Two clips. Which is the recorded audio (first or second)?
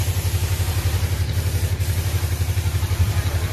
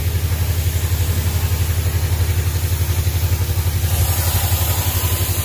second